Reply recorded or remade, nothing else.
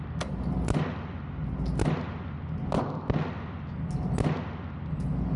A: recorded